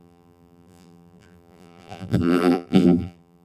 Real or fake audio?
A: fake